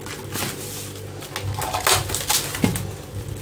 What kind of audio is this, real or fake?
real